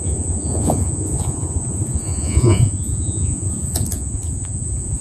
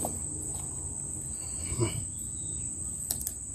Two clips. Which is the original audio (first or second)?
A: second